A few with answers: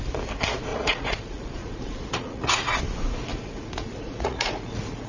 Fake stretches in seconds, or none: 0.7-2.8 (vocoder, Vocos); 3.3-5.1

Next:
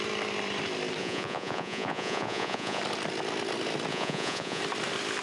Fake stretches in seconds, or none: 1.0-2.8 (vocoder, Vocos); 3.9-4.6

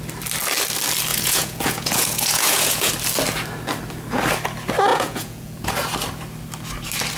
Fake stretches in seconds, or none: 1.1-2.9 (vocoder, Vocos); 4.9-5.7